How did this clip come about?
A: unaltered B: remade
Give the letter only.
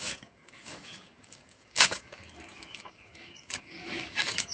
B